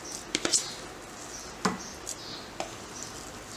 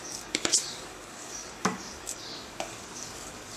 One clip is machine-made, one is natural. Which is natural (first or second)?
first